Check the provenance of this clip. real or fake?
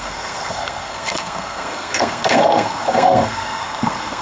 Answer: fake